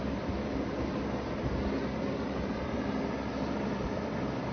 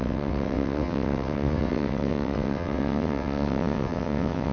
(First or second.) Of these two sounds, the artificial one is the second